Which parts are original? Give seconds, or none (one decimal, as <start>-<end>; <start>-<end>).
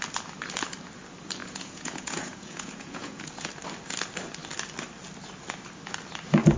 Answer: 0.0-1.4; 3.5-6.6